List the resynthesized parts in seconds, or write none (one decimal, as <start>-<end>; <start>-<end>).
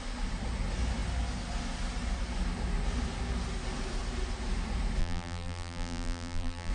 5.0-6.7